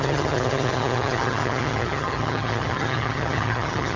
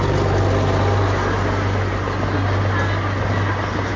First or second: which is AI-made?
first